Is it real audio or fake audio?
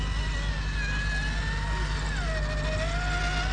real